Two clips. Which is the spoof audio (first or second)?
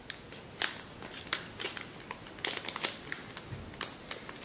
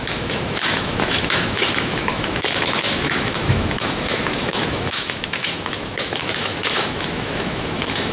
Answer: second